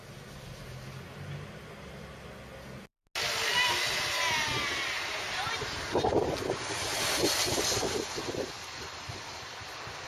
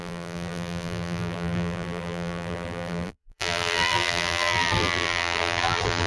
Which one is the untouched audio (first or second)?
first